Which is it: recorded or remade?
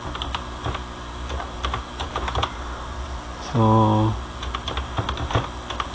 recorded